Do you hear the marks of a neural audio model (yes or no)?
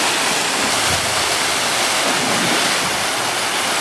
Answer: no